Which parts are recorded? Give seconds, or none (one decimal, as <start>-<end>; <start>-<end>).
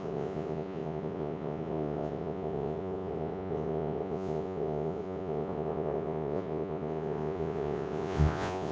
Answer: none